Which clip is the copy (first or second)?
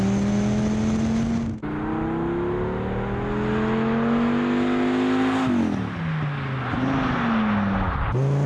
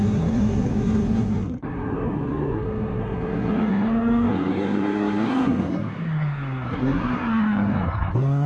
second